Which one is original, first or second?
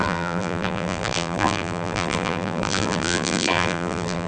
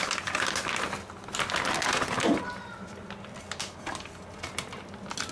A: second